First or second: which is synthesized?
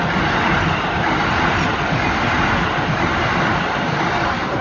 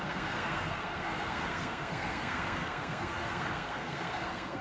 second